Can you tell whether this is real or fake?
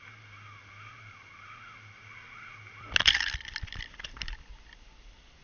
real